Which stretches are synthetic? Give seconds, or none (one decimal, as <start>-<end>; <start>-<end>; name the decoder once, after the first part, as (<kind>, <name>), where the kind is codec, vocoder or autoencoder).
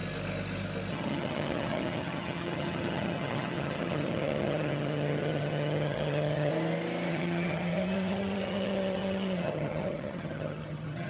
0.9-6.5 (vocoder, HiFi-GAN); 7.1-11.1